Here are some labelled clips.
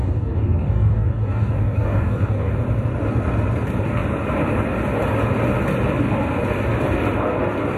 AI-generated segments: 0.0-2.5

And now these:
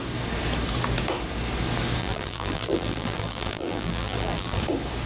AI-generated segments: 2.0-4.6

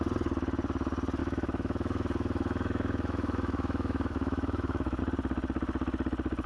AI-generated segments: 1.2-5.0

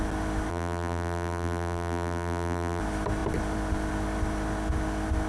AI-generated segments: 0.5-2.8

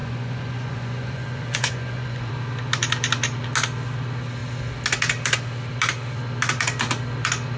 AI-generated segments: 0.0-2.3

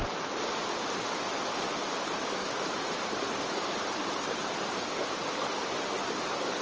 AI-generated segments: 2.4-6.6